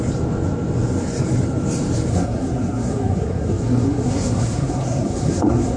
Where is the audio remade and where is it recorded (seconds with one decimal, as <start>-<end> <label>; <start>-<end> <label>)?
0.0-2.1 recorded; 2.1-5.8 remade